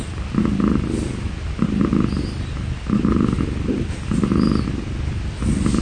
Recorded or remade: recorded